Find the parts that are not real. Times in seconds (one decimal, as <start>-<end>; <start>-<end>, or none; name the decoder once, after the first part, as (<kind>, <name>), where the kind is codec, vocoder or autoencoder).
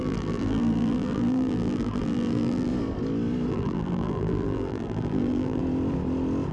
0.0-2.7 (vocoder, BigVGAN v2); 3.5-5.6